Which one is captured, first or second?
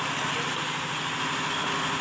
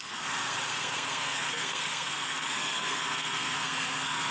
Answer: first